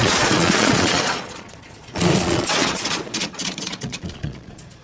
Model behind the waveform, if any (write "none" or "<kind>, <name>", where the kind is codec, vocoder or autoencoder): vocoder, Vocos